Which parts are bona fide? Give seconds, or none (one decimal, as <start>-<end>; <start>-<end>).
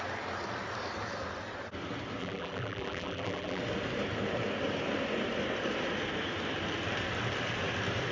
0.0-2.2; 3.6-8.1